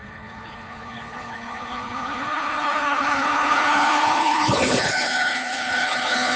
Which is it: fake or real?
fake